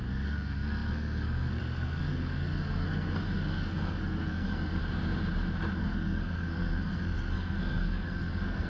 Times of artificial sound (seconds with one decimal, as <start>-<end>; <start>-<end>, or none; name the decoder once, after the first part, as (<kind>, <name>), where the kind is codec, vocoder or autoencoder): 0.0-4.8 (codec, SNAC); 5.8-8.7